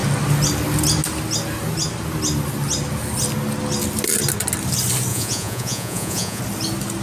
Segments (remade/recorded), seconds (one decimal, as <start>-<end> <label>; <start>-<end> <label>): 0.0-5.1 recorded; 5.1-6.4 remade; 6.4-7.0 recorded